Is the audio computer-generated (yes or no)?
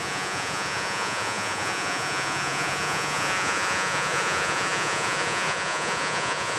yes